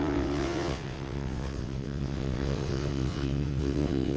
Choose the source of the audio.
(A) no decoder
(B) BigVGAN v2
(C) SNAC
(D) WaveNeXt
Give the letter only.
D